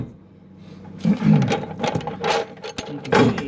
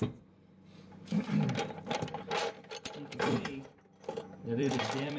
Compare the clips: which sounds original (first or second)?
first